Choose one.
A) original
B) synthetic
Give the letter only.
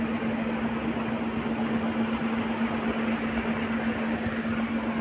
A